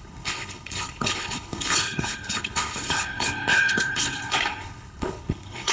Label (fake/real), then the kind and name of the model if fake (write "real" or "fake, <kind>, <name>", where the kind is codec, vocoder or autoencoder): fake, codec, HILCodec